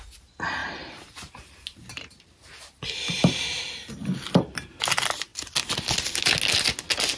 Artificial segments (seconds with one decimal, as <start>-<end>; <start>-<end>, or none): 0.6-2.4